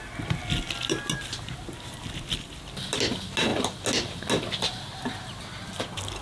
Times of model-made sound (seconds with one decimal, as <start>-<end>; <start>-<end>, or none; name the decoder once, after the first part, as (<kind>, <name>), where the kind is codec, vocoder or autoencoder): none